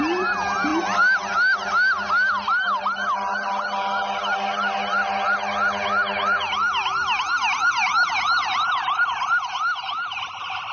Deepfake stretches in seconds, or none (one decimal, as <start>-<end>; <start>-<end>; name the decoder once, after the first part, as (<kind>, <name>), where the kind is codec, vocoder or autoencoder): none